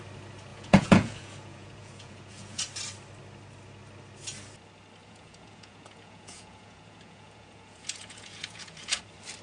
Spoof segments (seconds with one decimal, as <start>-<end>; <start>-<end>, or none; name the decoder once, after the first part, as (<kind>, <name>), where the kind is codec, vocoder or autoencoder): 0.5-2.6 (vocoder, Vocos); 5.0-9.0